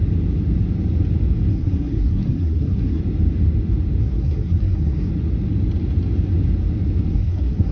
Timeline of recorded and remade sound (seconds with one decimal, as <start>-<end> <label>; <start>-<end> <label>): 0.0-1.5 recorded; 1.5-3.0 remade; 3.0-4.0 recorded; 4.0-5.1 remade; 5.1-7.1 recorded; 7.1-7.7 remade